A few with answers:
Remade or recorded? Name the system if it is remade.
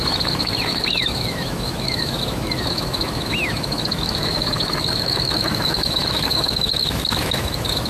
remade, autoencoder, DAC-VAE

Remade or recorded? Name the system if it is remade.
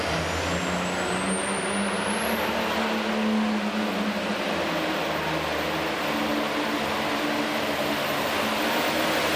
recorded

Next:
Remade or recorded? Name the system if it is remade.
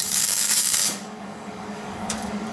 remade, codec, DAC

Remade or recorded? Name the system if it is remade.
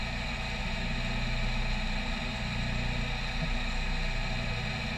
recorded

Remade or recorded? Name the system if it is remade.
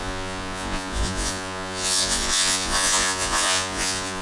remade, vocoder, Vocos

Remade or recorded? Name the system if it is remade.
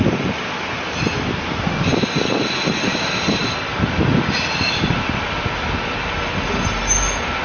recorded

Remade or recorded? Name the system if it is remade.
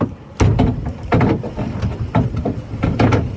recorded